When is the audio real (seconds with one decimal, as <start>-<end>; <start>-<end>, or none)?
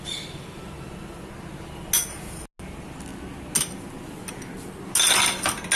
0.0-5.8